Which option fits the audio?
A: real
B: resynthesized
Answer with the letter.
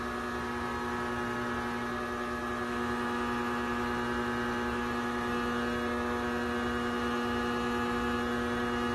A